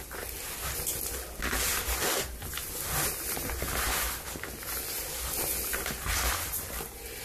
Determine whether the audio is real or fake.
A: real